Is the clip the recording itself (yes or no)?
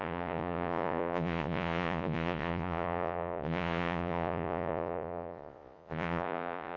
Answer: no